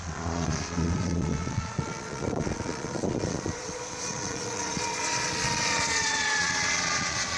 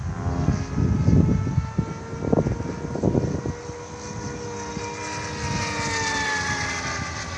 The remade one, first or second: first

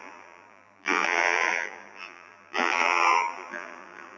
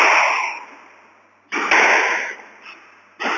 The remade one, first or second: first